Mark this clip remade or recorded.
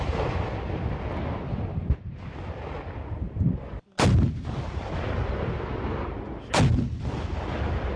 recorded